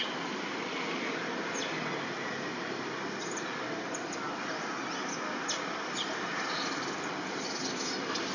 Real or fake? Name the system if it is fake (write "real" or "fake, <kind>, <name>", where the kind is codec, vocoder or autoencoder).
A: real